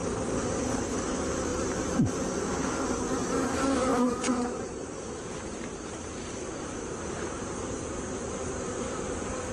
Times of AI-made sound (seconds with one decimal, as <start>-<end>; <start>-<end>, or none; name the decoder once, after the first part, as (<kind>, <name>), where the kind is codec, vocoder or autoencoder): 1.5-2.2 (vocoder, BigVGAN v2); 3.9-9.0